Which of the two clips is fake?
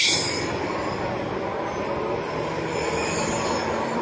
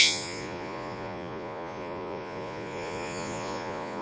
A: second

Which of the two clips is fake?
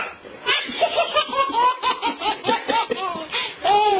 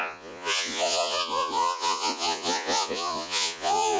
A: second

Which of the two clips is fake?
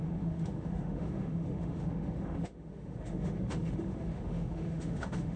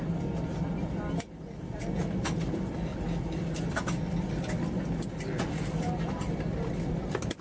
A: first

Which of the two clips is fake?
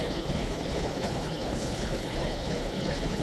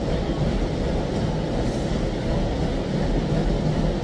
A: first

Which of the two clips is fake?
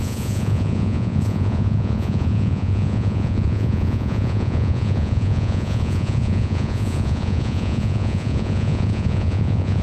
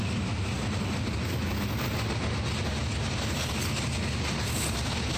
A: first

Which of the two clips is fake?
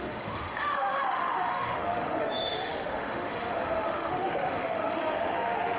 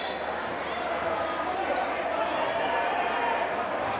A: first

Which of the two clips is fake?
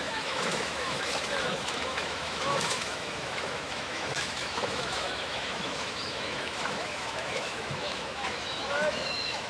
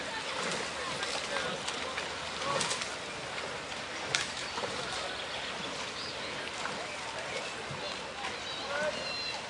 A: first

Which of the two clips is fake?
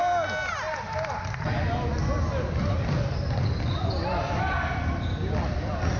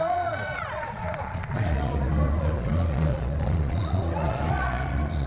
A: second